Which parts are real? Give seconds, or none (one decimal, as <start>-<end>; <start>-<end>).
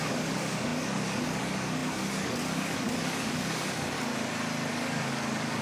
4.1-4.7